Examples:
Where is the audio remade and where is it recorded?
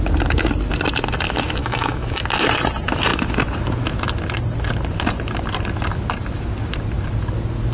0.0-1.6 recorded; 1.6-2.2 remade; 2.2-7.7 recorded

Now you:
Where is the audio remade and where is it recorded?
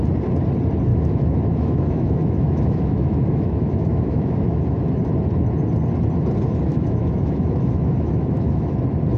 0.0-0.9 recorded; 0.9-5.1 remade; 5.1-6.7 recorded; 6.7-8.7 remade; 8.7-9.2 recorded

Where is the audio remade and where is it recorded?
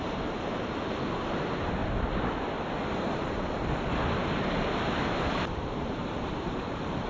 0.0-1.8 remade; 1.8-2.9 recorded; 2.9-7.1 remade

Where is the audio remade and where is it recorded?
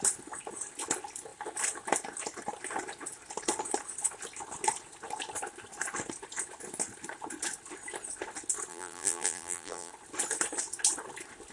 0.0-8.7 recorded; 8.7-9.9 remade; 9.9-11.5 recorded